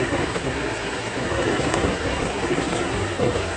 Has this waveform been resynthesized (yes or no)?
yes